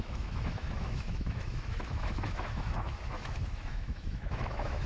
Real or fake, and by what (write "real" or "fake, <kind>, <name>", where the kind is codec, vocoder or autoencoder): fake, autoencoder, DAC-VAE